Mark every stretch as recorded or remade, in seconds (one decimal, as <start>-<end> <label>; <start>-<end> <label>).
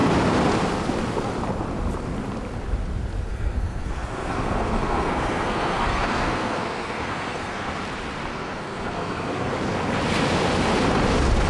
0.0-3.3 recorded; 3.3-7.7 remade; 7.7-8.3 recorded; 8.3-9.5 remade; 9.5-11.5 recorded